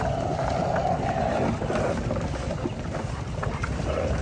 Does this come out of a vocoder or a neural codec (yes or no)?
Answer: no